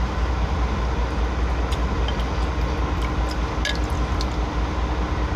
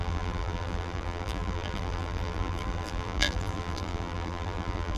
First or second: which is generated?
second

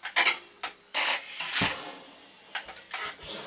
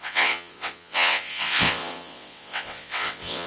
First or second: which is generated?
second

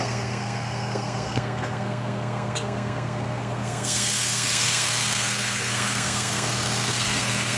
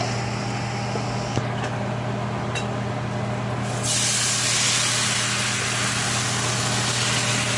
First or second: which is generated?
first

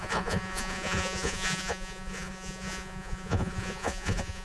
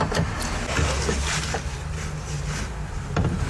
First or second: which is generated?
first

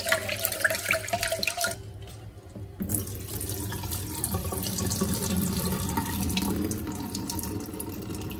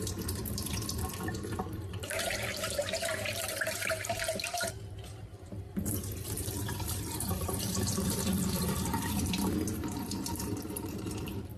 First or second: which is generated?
second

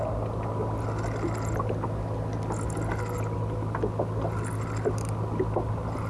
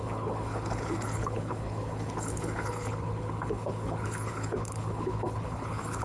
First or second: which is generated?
second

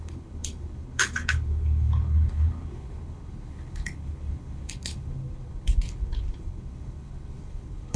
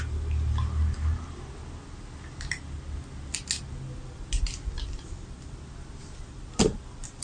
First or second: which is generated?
first